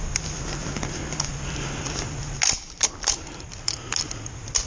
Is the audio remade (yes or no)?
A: no